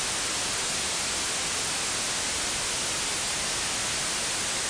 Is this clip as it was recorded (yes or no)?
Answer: yes